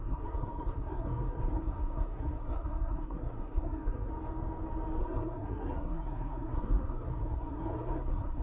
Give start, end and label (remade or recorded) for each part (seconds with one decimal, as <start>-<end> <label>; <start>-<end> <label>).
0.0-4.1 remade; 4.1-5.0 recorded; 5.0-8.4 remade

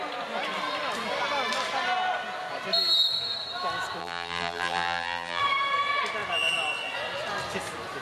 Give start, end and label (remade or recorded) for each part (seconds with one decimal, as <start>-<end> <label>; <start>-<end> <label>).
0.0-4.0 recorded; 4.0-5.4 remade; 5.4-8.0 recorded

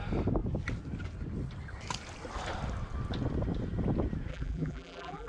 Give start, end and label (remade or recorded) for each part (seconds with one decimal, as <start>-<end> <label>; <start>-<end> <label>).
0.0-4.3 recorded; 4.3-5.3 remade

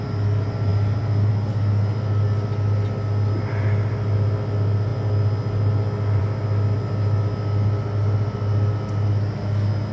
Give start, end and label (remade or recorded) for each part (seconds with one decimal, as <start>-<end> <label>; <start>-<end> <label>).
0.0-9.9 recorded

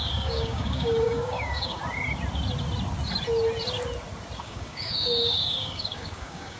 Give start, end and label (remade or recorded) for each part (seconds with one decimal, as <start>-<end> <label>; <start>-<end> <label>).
0.0-1.8 remade; 1.8-4.4 recorded; 4.4-6.6 remade

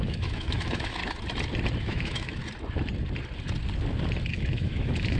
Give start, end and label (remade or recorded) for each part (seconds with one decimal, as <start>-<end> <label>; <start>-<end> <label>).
0.0-1.0 remade; 1.0-1.8 recorded; 1.8-2.4 remade; 2.4-4.3 recorded; 4.3-5.2 remade

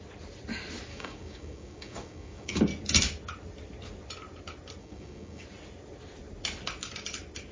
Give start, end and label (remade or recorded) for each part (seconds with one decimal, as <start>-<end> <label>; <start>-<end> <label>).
0.0-0.9 recorded; 0.9-2.6 remade; 2.6-4.8 recorded; 4.8-5.4 remade; 5.4-7.5 recorded

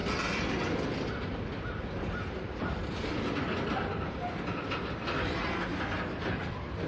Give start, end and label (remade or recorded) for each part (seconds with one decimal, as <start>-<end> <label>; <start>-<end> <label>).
0.0-6.9 recorded